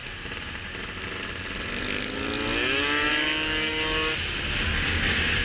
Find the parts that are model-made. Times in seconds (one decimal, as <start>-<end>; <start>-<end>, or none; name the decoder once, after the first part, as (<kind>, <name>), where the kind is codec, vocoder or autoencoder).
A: none